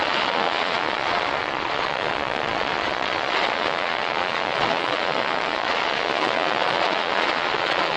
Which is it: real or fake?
fake